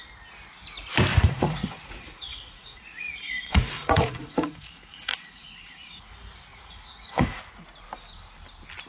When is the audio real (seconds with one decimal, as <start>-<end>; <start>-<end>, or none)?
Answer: 0.0-1.1; 6.1-6.5; 7.4-8.9